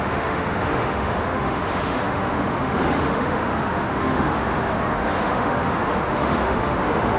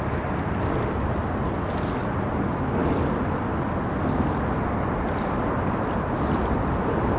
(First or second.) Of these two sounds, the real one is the second